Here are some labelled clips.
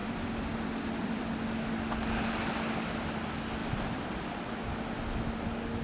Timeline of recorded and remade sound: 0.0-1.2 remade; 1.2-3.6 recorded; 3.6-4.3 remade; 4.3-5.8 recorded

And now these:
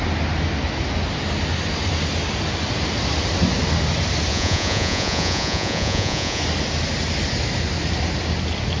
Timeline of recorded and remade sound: 0.0-4.3 recorded; 4.3-6.4 remade; 6.4-8.8 recorded

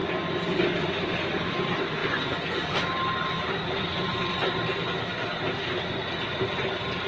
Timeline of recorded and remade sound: 0.0-7.1 recorded

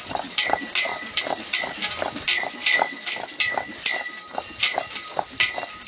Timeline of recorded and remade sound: 0.0-0.9 recorded; 0.9-3.4 remade; 3.4-5.9 recorded

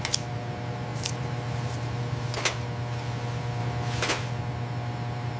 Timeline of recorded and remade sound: 0.0-0.9 recorded; 0.9-2.0 remade; 2.0-5.4 recorded

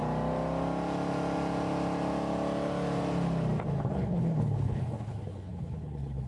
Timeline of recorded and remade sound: 0.0-3.8 recorded; 3.8-6.3 remade